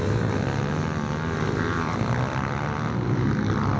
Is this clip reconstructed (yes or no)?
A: no